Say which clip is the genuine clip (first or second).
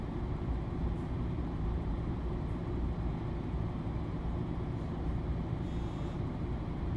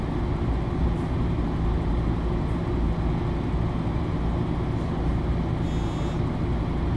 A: second